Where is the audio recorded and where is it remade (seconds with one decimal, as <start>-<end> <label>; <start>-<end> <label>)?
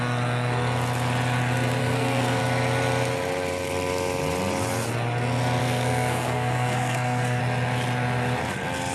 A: 0.0-1.8 recorded; 1.8-2.4 remade; 2.4-5.6 recorded; 5.6-7.4 remade; 7.4-8.9 recorded